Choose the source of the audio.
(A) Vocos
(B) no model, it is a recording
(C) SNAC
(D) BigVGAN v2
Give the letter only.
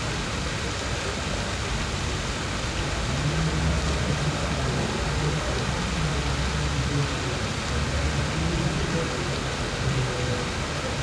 B